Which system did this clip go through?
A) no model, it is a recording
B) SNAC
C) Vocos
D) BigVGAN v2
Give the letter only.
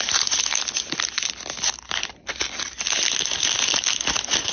A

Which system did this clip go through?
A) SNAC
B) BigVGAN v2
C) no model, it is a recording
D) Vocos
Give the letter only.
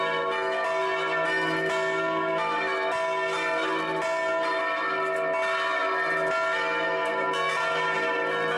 C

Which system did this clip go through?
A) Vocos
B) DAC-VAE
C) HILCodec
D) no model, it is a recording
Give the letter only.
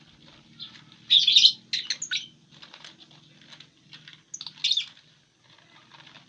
D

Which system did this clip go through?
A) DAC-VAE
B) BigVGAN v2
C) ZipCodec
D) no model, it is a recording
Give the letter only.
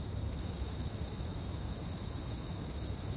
A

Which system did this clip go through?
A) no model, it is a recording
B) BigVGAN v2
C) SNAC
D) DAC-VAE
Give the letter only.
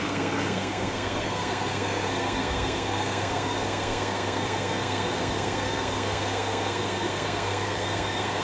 C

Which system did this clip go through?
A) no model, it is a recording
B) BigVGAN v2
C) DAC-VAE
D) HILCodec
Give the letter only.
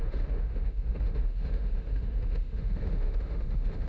C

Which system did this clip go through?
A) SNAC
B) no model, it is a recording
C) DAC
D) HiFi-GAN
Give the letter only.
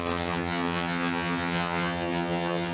D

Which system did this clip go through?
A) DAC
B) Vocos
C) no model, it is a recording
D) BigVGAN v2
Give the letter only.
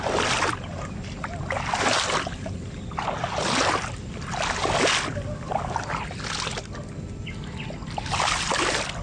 C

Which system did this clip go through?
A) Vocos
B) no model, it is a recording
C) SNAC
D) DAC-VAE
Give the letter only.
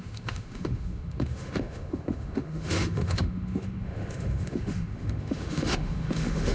D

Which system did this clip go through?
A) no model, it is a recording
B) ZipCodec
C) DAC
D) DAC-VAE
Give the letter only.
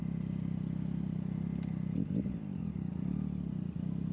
A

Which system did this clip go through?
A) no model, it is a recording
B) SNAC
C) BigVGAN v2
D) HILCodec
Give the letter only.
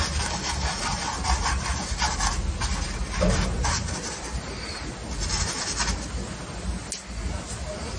A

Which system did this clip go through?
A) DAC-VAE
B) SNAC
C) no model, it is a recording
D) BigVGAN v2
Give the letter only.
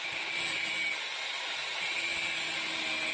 C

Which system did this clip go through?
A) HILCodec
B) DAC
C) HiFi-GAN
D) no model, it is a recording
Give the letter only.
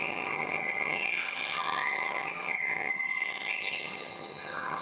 C